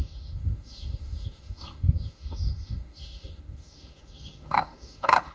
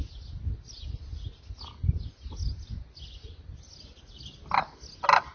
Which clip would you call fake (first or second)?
first